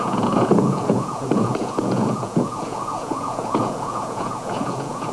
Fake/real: fake